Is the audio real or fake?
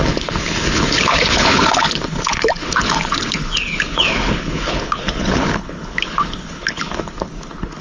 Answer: fake